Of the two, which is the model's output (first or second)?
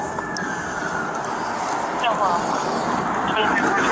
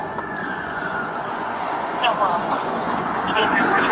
second